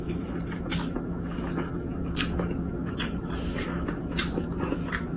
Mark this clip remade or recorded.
remade